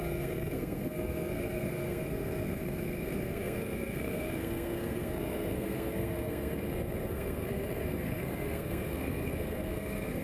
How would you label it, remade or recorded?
remade